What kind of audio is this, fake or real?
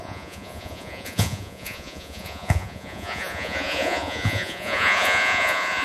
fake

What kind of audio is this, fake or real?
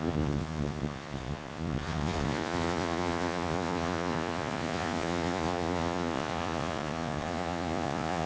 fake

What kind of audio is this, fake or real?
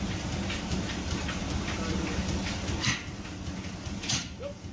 real